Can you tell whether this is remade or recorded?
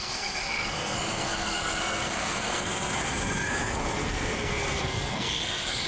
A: remade